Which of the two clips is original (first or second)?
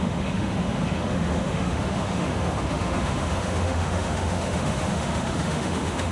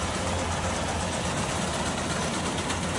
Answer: second